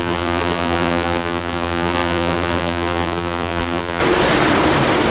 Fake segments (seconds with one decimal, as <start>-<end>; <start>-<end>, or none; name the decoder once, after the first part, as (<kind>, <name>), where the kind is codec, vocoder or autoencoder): 0.0-4.0 (vocoder, BigVGAN v2)